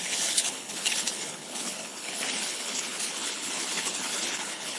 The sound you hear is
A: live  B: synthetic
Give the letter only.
B